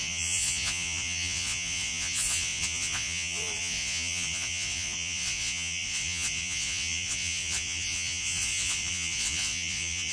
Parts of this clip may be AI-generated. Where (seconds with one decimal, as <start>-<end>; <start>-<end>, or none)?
0.0-10.1